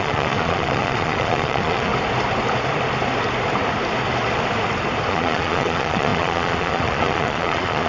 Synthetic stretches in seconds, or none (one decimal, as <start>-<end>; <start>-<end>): 0.0-1.9; 5.1-7.9